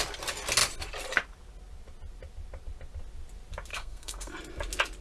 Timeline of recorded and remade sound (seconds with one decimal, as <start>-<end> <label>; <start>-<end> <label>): 0.0-3.7 recorded; 3.7-4.3 remade; 4.3-5.0 recorded